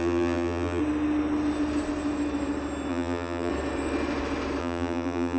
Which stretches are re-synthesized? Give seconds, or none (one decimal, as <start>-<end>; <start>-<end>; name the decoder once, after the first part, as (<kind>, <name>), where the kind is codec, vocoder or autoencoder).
0.0-0.8 (vocoder, BigVGAN v2); 2.9-3.5; 4.6-5.4